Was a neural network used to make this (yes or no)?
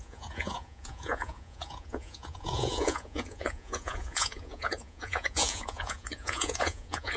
yes